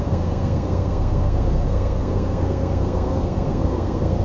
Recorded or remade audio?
remade